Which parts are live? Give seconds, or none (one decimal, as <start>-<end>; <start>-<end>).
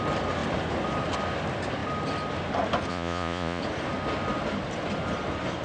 0.0-2.9; 3.6-5.6